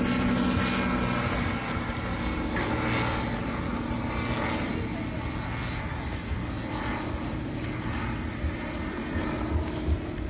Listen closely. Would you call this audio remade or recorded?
recorded